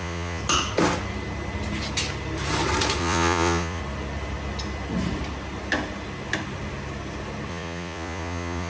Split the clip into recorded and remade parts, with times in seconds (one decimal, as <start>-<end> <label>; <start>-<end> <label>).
0.0-0.4 remade; 0.4-3.0 recorded; 3.0-3.8 remade; 3.8-7.5 recorded; 7.5-8.7 remade